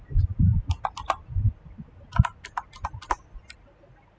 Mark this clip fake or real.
real